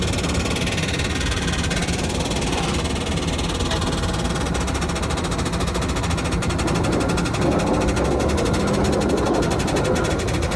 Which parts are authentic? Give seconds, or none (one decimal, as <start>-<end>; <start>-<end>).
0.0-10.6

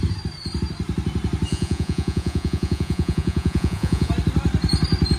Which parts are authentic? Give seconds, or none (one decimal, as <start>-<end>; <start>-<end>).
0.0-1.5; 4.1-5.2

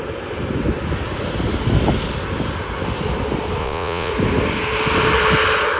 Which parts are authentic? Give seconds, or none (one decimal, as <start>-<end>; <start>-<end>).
0.0-3.6; 4.1-5.8